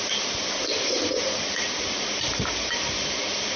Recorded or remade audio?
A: remade